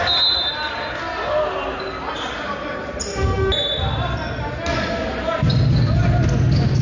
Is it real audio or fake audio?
real